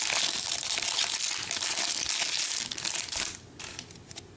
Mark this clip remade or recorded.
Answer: recorded